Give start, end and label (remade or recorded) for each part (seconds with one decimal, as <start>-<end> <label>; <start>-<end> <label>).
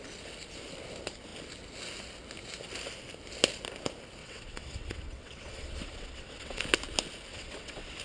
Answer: 0.0-4.2 recorded; 4.2-6.6 remade; 6.6-7.3 recorded; 7.3-8.0 remade